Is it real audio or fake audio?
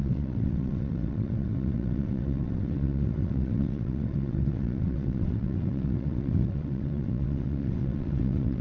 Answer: fake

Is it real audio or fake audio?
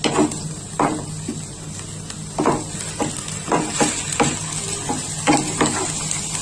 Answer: real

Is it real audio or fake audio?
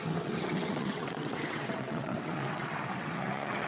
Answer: fake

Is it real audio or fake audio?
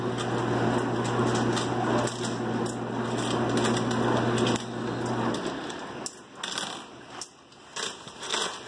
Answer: real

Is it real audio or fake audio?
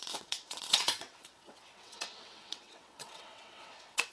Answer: fake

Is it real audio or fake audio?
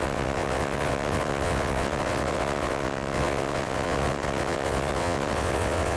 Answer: fake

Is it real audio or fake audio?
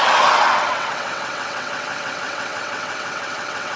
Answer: fake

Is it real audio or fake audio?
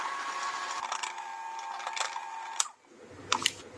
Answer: real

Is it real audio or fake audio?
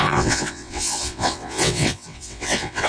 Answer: fake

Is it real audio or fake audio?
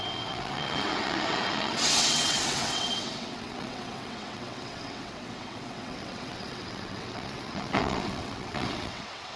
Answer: fake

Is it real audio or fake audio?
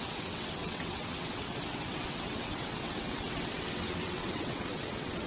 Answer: fake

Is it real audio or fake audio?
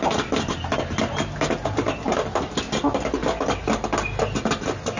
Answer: real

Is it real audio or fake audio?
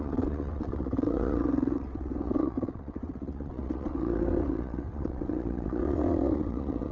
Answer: fake